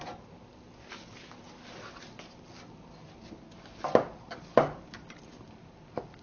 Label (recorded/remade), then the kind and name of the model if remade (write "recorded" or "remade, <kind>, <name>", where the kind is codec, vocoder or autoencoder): recorded